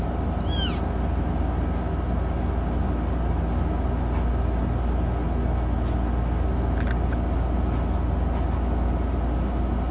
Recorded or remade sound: recorded